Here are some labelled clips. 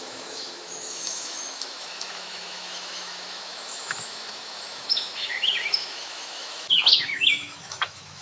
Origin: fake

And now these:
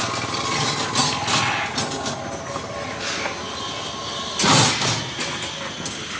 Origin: real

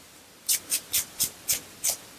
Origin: real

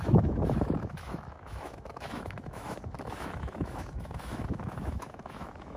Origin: fake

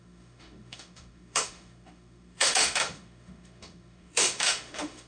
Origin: fake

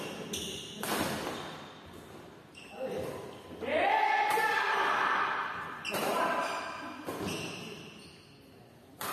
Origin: real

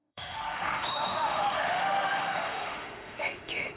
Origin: fake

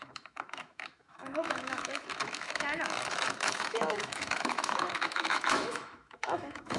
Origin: fake